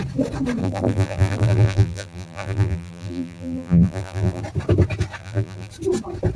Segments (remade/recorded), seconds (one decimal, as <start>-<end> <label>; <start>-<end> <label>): 0.0-0.6 recorded; 0.6-4.4 remade; 4.4-5.2 recorded; 5.2-5.7 remade; 5.7-6.4 recorded